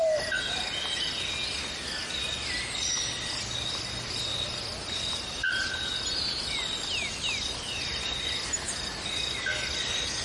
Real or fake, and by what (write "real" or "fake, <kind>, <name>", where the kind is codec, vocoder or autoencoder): real